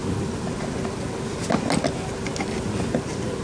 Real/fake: real